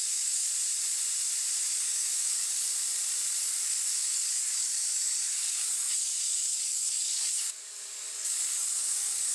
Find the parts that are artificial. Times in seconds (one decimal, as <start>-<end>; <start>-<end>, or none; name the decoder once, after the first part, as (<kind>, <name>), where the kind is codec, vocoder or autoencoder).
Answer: 0.0-0.5 (codec, DAC); 1.8-2.7; 3.4-9.3